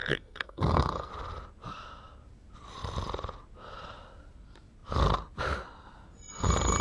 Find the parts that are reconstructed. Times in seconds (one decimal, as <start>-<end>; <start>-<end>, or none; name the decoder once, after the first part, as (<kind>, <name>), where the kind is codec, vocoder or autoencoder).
0.0-1.1 (codec, SNAC)